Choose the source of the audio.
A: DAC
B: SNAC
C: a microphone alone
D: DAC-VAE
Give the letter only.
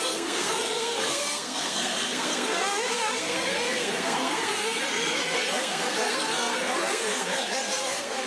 B